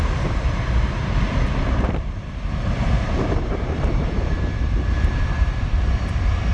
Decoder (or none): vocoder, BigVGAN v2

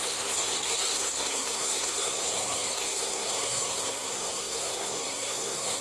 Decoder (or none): codec, SNAC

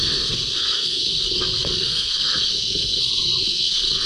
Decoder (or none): codec, SNAC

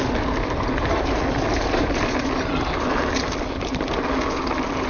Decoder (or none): none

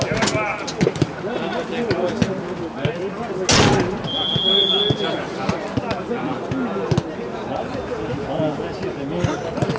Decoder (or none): none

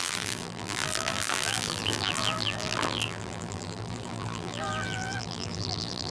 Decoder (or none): vocoder, BigVGAN v2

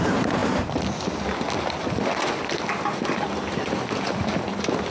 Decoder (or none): none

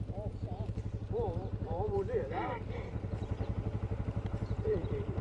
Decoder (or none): vocoder, BigVGAN v2